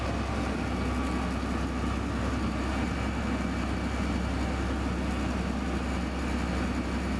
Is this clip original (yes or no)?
yes